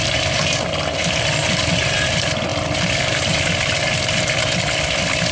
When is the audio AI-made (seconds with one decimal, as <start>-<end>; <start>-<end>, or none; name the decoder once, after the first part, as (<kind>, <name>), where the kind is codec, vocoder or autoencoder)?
none